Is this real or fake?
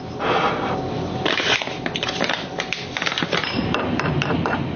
real